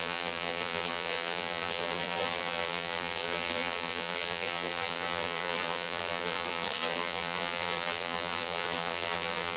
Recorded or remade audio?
remade